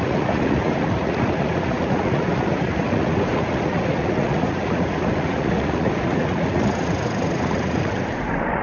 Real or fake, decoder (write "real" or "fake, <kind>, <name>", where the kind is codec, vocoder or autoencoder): fake, vocoder, Vocos